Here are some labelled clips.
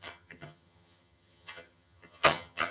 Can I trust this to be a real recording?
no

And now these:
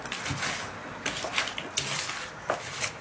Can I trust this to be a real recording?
yes